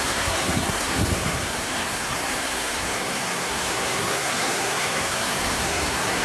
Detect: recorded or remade remade